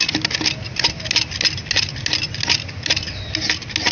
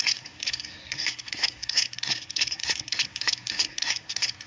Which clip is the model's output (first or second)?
second